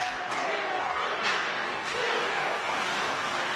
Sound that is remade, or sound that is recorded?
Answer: remade